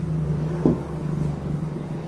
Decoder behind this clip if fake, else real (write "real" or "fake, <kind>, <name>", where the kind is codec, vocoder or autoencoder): fake, codec, DAC